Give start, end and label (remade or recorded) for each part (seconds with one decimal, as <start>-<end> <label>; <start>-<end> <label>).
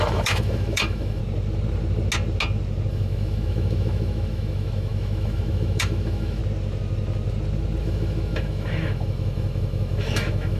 0.0-1.2 remade; 1.2-2.9 recorded; 2.9-6.4 remade; 6.4-7.8 recorded; 7.8-10.6 remade